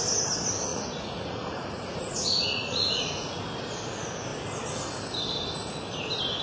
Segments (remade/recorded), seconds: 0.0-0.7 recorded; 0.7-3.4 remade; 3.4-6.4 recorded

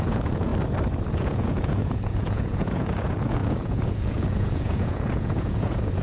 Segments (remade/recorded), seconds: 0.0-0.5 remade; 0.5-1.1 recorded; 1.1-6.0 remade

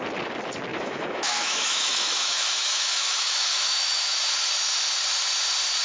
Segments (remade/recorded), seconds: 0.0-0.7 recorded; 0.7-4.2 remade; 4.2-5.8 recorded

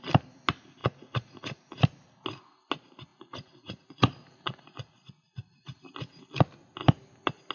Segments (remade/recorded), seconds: 0.0-0.8 recorded; 0.8-1.8 remade; 1.8-3.1 recorded; 3.1-5.8 remade; 5.8-7.5 recorded